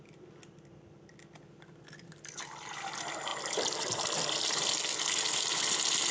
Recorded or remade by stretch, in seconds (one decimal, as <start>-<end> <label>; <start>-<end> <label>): 0.0-6.1 recorded